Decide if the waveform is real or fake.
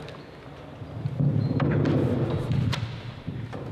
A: real